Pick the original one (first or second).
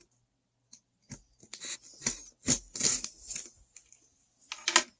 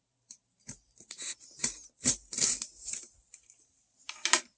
first